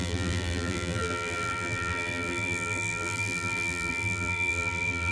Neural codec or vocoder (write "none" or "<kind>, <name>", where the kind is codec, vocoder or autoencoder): vocoder, BigVGAN v2